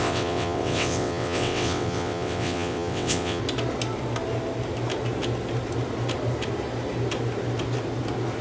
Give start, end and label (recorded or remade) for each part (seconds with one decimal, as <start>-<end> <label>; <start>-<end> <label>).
0.0-3.4 remade; 3.4-8.4 recorded